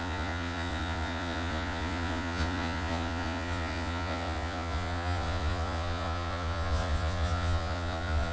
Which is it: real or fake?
fake